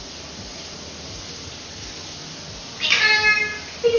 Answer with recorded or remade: recorded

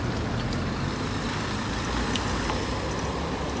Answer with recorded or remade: recorded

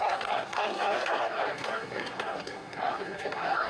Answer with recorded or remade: remade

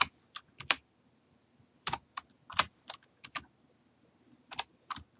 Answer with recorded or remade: remade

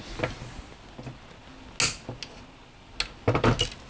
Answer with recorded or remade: recorded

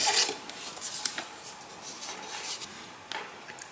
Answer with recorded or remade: recorded